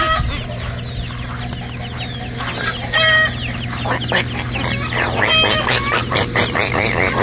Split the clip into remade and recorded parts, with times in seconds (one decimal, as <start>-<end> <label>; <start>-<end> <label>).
0.0-6.0 recorded; 6.0-6.8 remade; 6.8-7.2 recorded